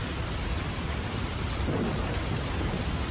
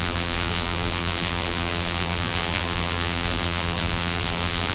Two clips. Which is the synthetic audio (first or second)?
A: second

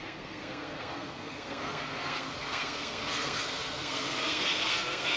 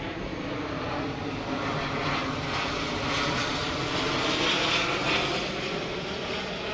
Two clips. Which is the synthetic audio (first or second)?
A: first